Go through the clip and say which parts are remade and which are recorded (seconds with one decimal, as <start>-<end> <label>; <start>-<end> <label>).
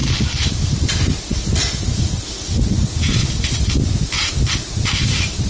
0.0-5.5 recorded